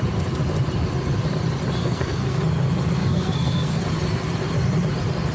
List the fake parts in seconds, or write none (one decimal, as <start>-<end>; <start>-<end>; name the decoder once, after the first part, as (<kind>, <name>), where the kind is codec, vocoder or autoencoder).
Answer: 1.8-2.4 (codec, SNAC); 3.0-3.8